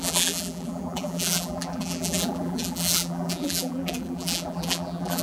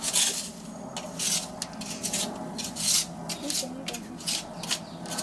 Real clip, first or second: second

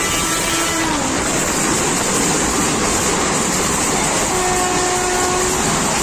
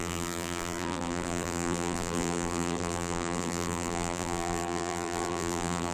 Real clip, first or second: first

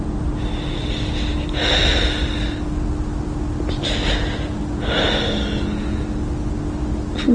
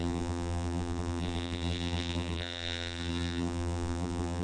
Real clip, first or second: first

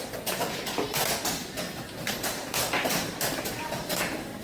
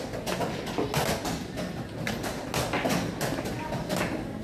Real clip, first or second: second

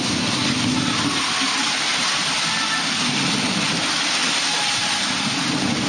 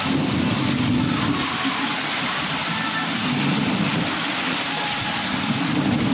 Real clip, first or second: first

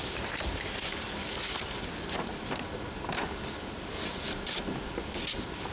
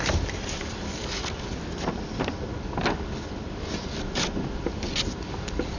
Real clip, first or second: first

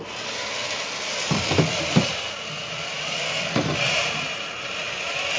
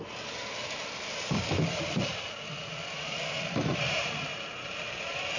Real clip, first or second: first